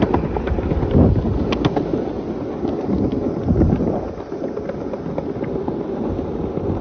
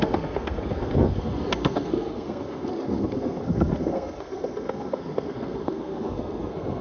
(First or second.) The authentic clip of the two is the first